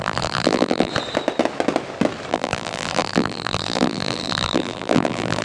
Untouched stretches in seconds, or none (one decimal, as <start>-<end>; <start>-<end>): 0.9-2.3

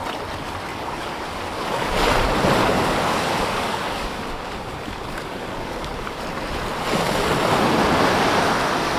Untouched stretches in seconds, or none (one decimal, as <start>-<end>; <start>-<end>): 0.0-0.7; 1.9-2.6; 6.2-9.0

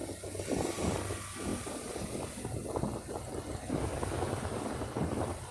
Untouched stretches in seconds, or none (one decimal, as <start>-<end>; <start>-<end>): 0.0-5.5